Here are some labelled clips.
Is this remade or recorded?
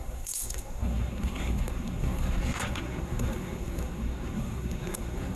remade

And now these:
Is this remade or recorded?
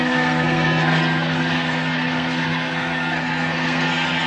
remade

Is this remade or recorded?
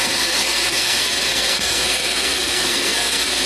remade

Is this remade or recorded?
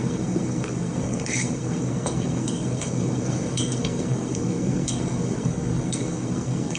remade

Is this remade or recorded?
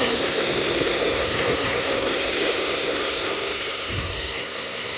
remade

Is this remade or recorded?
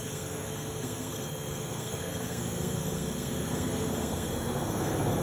remade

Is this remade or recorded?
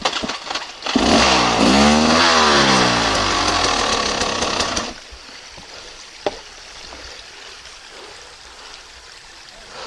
recorded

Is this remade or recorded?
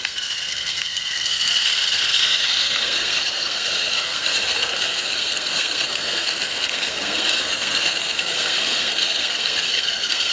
remade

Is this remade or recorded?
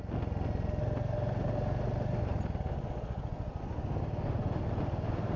recorded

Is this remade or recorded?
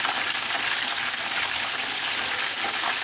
recorded